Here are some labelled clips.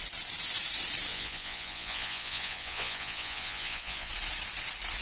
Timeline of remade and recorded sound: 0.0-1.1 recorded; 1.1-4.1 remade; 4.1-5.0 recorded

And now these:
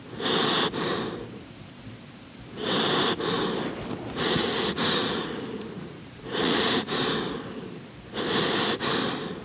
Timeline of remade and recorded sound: 0.0-4.2 recorded; 4.2-7.0 remade; 7.0-9.4 recorded

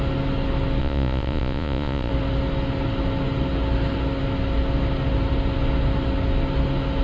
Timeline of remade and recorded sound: 0.0-0.8 recorded; 0.8-2.1 remade; 2.1-7.0 recorded

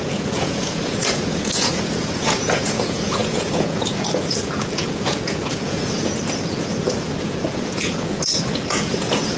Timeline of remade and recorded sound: 0.0-9.4 remade